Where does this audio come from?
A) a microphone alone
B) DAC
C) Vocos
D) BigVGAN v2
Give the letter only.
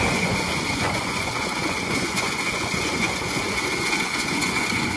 C